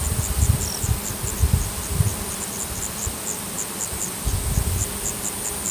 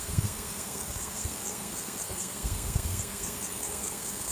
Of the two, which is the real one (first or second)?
first